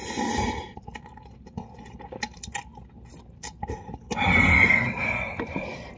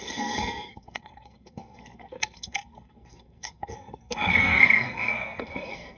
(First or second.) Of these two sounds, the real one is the first